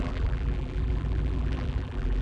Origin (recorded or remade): remade